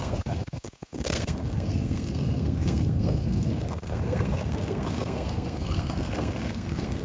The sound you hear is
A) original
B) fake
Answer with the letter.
B